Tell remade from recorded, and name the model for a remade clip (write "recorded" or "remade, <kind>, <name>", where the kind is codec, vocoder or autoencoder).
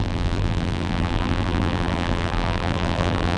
remade, vocoder, BigVGAN v2